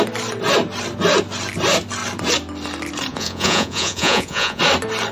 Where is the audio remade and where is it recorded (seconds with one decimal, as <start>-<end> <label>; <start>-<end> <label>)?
0.0-3.1 recorded; 3.1-4.6 remade; 4.6-5.1 recorded